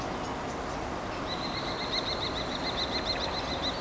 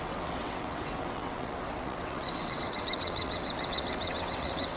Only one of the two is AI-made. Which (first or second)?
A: second